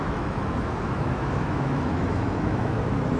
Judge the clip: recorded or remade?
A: remade